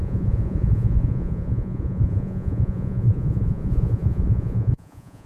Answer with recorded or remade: remade